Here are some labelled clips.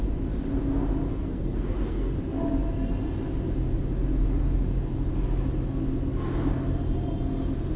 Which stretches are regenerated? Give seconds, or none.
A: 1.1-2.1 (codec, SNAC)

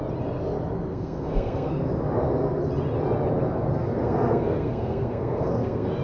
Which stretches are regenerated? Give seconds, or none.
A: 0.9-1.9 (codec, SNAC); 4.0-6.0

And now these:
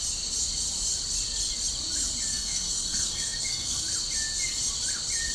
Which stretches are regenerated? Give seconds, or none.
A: 2.3-3.8 (codec, SNAC)

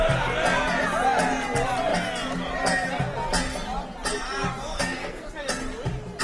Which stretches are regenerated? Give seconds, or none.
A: 4.7-5.3 (codec, SNAC)

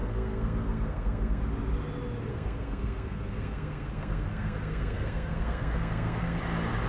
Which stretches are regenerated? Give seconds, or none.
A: 0.0-1.4 (codec, SNAC); 2.3-6.4